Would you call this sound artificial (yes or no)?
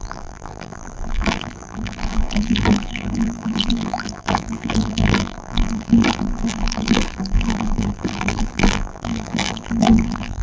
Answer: yes